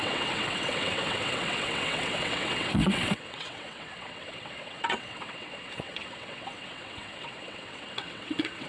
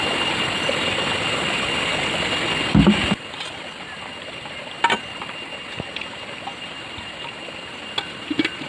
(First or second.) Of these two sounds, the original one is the second